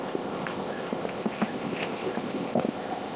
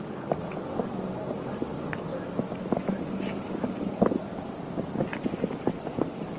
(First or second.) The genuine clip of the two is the second